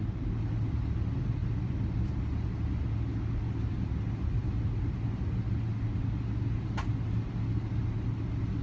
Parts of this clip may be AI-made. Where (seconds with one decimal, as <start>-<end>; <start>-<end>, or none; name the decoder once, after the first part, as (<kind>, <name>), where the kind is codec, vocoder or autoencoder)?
none